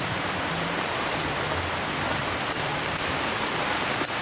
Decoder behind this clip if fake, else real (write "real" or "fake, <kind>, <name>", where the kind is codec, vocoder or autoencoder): fake, vocoder, BigVGAN v2